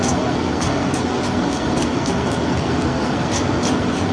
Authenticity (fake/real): fake